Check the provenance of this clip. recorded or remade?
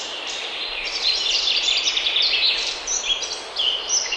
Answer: recorded